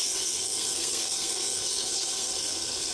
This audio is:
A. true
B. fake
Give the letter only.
B